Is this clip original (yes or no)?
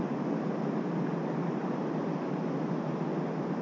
yes